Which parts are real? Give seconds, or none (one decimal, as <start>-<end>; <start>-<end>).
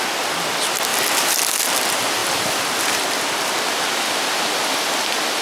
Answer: 0.0-5.4